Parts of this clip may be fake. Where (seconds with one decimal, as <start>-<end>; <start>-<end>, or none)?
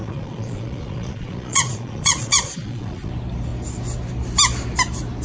0.0-3.1